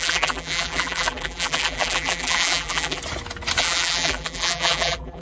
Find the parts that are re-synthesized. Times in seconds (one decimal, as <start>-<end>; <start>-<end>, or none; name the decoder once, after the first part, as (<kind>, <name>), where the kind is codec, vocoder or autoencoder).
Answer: 0.0-3.0 (vocoder, BigVGAN v2); 3.6-5.2